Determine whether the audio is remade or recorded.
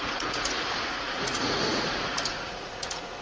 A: remade